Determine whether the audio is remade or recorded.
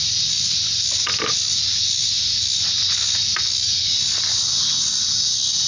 recorded